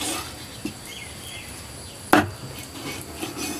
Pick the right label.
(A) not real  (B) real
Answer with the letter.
B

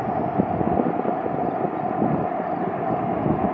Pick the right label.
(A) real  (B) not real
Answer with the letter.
A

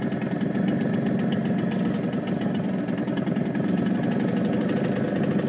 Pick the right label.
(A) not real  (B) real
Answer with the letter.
B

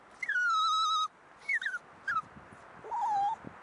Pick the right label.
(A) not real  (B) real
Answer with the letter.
B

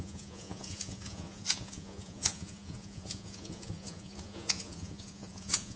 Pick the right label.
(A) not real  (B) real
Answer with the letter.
A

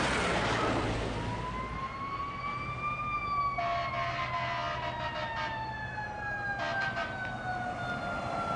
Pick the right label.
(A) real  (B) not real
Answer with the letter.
A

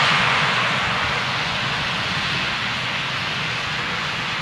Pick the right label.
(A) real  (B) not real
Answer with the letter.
B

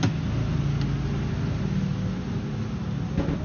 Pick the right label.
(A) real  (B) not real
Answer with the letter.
A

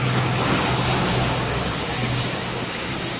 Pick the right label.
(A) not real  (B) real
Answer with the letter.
A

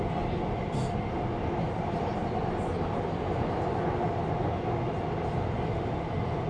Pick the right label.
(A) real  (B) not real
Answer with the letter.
A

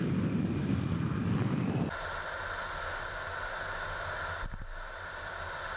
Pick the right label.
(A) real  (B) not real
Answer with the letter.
A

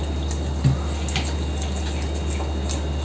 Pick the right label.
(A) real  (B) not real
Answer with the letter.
A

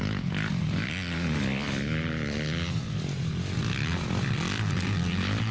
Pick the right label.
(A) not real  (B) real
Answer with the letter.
B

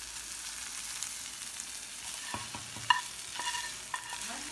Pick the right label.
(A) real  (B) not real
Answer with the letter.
A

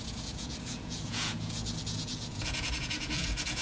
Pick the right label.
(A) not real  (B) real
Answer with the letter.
A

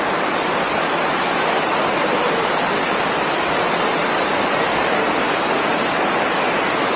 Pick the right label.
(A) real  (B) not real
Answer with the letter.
A